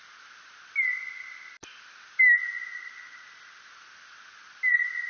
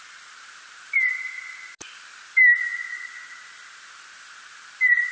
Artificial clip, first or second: second